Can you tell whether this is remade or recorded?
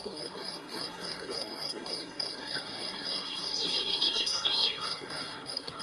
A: remade